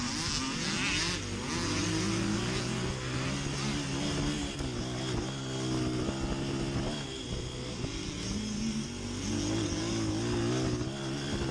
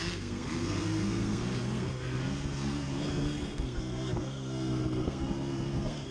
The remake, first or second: second